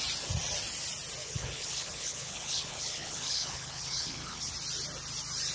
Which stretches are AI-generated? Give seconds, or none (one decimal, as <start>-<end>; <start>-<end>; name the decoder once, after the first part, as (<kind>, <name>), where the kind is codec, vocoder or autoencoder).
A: 1.2-4.5 (codec, HILCodec)